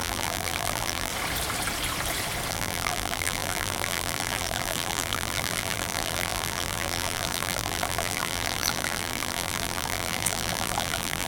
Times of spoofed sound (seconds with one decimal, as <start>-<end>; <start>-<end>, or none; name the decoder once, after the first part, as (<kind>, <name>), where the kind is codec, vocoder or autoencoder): 0.0-1.1 (vocoder, BigVGAN v2); 2.5-11.3